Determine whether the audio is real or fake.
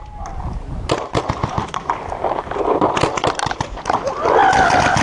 real